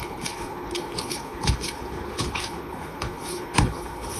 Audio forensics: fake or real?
fake